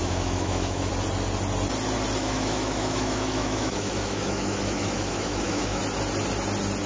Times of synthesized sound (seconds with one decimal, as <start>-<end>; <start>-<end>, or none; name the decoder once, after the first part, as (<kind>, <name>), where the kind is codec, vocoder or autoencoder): 0.0-0.9 (autoencoder, DAC-VAE); 2.2-5.8